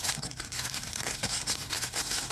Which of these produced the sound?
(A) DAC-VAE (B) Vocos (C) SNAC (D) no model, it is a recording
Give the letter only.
C